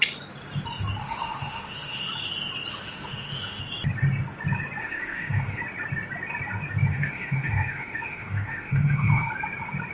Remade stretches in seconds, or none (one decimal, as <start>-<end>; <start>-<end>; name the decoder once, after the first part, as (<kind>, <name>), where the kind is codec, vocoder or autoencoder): 1.0-2.1 (autoencoder, DAC-VAE); 2.7-3.6; 4.8-5.6; 6.9-9.3